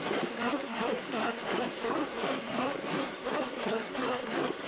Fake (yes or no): yes